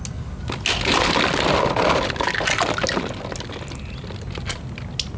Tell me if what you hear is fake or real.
real